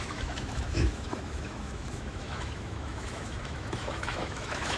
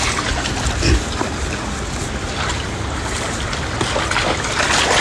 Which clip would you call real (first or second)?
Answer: second